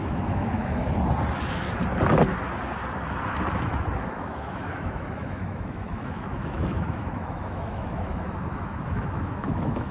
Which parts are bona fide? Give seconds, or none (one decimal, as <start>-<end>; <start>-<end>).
0.8-3.9